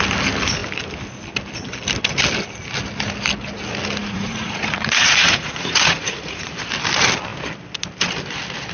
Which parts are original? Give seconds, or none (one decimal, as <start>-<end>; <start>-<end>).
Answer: 0.0-4.0; 6.5-8.7